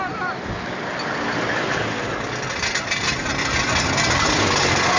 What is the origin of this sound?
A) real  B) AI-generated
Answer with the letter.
A